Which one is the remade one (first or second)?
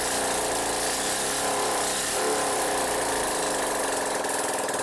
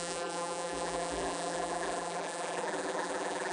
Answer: second